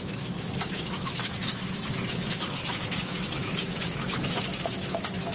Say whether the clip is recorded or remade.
remade